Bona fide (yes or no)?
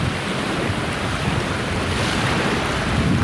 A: yes